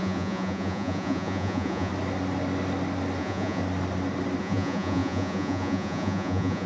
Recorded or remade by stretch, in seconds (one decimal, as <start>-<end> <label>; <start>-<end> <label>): 0.0-1.9 remade; 1.9-3.2 recorded; 3.2-3.6 remade; 3.6-4.4 recorded; 4.4-6.7 remade